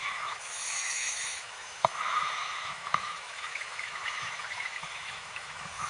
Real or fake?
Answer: fake